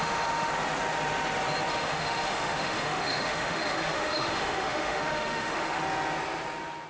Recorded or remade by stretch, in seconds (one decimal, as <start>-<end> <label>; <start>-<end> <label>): 0.0-0.5 remade; 0.5-1.7 recorded; 1.7-5.8 remade; 5.8-6.9 recorded